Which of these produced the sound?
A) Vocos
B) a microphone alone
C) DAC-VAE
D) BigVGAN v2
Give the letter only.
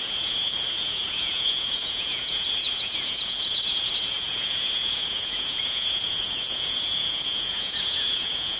A